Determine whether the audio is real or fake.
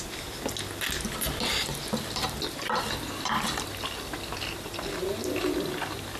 real